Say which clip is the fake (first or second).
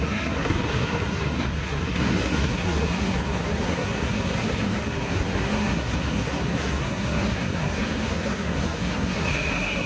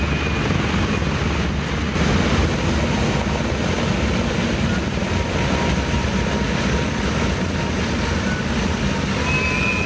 first